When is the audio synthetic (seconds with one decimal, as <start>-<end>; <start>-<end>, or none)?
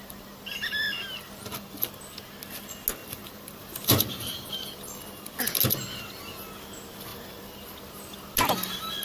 3.0-4.5; 7.1-7.7